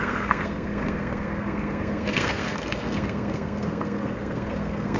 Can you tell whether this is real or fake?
fake